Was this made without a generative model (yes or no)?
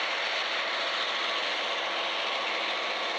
yes